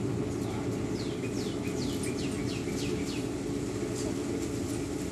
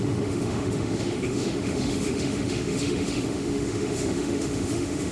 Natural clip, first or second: first